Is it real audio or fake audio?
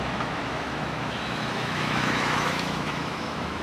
fake